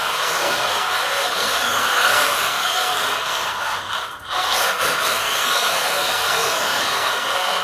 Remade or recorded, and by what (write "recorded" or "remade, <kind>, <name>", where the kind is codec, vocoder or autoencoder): remade, codec, SNAC